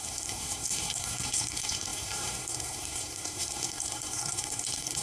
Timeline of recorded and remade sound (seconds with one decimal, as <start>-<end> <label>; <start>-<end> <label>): 0.0-5.0 remade